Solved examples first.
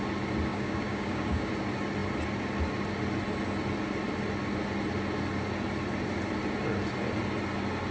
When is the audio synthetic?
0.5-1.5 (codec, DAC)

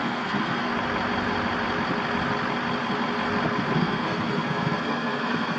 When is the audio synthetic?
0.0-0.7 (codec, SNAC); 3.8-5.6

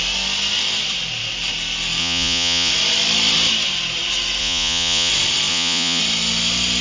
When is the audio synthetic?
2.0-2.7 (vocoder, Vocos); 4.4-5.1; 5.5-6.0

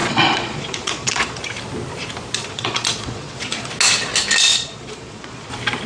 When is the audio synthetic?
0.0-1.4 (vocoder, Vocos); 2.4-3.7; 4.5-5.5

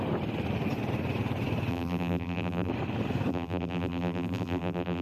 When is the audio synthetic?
1.7-2.7 (vocoder, BigVGAN v2); 3.3-5.0

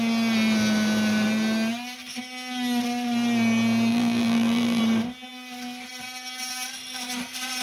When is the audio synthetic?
3.9-4.8 (vocoder, BigVGAN v2)